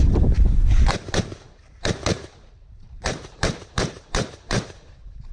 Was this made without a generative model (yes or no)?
no